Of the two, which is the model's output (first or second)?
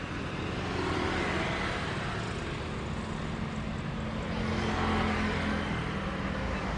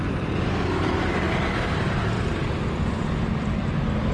second